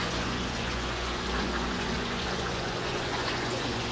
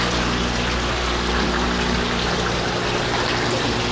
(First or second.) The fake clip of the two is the first